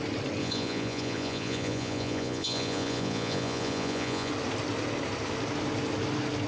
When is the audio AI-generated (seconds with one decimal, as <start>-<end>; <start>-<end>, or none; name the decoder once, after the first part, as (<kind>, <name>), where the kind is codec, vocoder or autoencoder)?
0.4-4.3 (vocoder, Vocos)